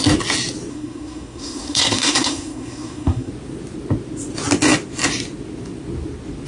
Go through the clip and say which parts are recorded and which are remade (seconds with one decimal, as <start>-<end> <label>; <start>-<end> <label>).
0.0-0.7 recorded; 0.7-3.3 remade; 3.3-6.5 recorded